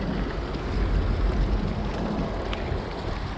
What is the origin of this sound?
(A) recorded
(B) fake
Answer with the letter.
A